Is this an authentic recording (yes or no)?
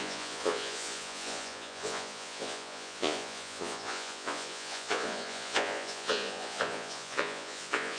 no